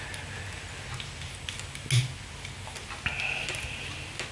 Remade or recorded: recorded